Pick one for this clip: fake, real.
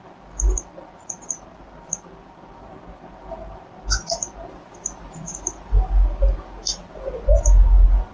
real